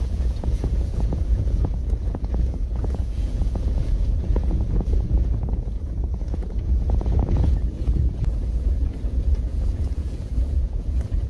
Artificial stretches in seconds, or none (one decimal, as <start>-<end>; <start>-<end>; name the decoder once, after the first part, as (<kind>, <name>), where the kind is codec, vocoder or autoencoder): 0.0-11.3 (vocoder, Vocos)